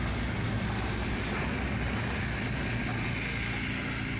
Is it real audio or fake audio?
real